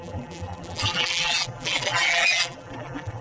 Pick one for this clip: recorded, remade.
remade